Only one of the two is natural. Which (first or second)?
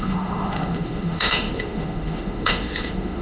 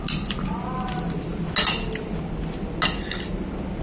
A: second